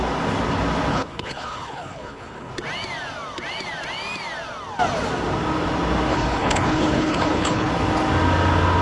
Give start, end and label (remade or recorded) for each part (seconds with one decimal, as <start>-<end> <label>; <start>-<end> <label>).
0.0-0.9 recorded; 0.9-2.5 remade; 2.5-6.1 recorded; 6.1-7.7 remade; 7.7-8.8 recorded